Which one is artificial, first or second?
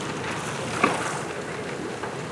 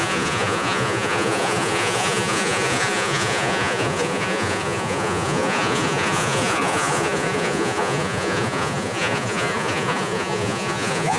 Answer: second